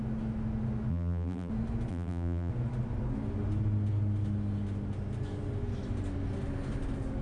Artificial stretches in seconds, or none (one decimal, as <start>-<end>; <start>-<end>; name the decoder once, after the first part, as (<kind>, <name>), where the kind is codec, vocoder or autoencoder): 0.9-1.5 (vocoder, BigVGAN v2); 1.9-2.5